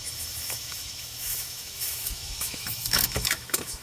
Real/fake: fake